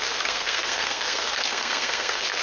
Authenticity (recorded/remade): remade